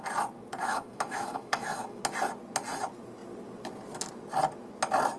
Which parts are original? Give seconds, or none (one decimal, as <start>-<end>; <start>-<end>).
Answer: 0.0-0.6; 2.0-5.2